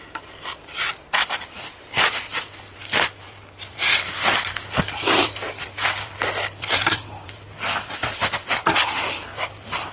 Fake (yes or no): yes